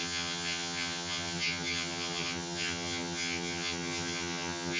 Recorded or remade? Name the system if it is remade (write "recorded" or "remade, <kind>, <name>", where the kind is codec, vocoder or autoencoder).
remade, vocoder, HiFi-GAN